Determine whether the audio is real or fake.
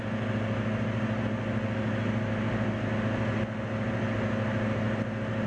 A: real